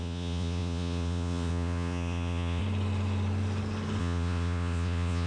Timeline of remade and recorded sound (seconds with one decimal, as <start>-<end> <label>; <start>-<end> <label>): 0.0-2.6 remade; 2.6-4.0 recorded; 4.0-5.3 remade